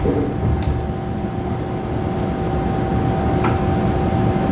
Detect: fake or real real